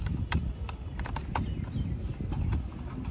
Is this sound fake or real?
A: real